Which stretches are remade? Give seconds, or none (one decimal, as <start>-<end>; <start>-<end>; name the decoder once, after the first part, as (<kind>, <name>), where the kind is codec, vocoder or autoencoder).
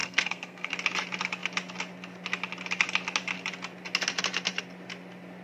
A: 0.0-0.7 (codec, SNAC)